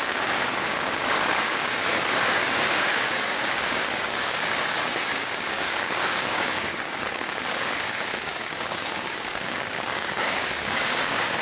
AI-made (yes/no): yes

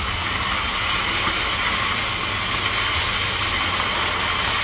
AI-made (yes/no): no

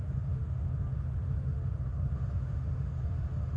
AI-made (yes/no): yes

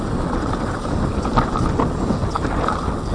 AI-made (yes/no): no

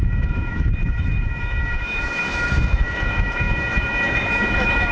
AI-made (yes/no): yes